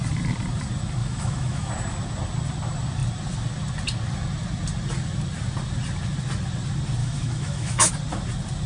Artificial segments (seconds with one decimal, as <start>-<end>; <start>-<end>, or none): 1.0-1.7; 7.0-7.9